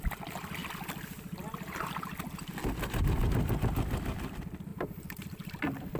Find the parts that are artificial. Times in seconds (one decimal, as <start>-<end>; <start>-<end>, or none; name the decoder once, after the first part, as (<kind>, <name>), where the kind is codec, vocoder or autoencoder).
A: 4.7-5.6 (vocoder, BigVGAN v2)